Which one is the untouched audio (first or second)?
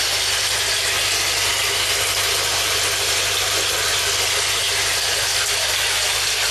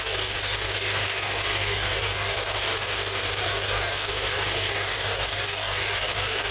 first